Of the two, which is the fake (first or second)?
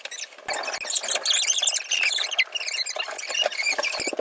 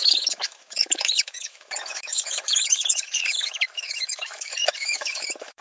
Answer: second